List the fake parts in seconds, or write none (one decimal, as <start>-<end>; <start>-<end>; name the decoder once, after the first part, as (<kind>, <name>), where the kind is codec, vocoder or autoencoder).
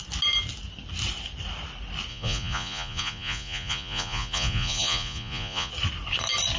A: 2.1-5.7 (vocoder, Vocos)